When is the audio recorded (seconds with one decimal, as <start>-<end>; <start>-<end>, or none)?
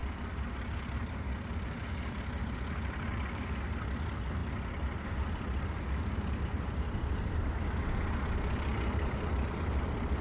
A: 0.0-10.2